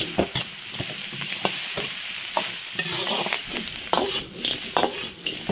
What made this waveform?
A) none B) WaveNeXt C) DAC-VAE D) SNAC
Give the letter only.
A